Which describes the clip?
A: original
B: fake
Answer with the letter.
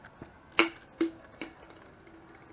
A